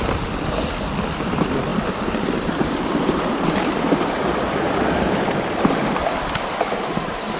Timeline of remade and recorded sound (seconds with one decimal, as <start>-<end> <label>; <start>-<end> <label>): 0.0-1.7 recorded; 1.7-5.6 remade; 5.6-7.4 recorded